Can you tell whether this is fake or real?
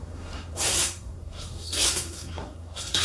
fake